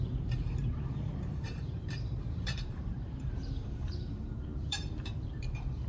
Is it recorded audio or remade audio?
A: remade